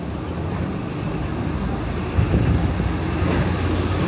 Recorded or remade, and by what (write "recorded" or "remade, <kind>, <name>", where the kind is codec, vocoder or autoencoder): recorded